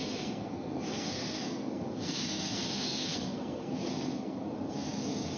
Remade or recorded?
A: remade